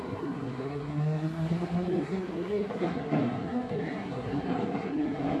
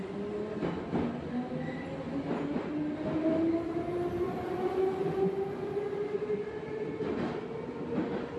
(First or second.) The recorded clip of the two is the second